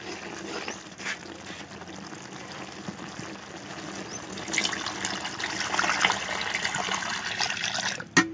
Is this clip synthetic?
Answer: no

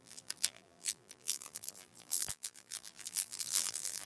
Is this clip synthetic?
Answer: yes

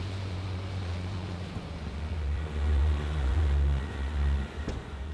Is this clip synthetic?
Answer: yes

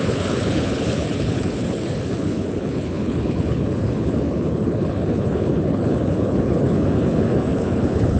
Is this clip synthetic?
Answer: yes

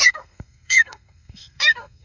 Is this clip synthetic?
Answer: yes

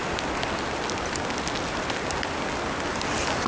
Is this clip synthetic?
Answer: no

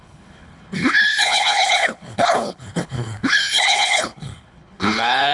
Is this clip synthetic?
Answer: yes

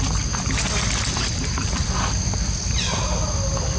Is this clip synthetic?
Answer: no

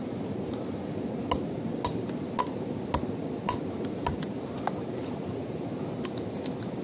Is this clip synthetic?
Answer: no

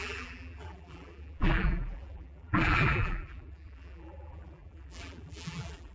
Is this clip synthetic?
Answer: yes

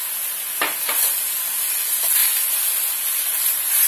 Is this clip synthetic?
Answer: no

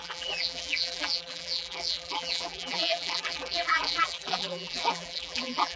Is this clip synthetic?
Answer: yes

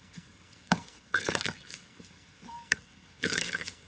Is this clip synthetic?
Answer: yes